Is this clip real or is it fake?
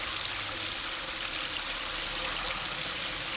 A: real